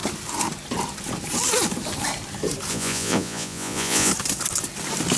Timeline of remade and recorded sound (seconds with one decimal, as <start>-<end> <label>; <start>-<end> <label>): 0.0-2.7 recorded; 2.7-4.1 remade; 4.1-5.2 recorded